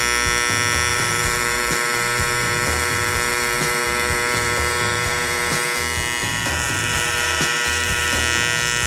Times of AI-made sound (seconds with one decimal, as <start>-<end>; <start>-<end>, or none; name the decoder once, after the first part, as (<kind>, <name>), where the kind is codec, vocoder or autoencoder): 0.9-5.8 (vocoder, BigVGAN v2); 6.2-8.2